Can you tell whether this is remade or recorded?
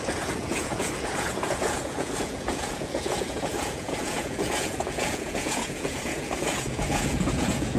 remade